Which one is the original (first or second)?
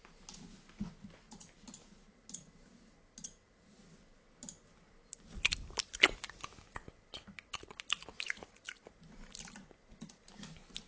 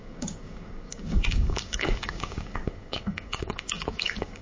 first